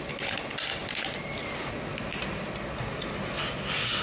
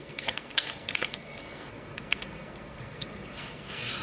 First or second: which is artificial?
second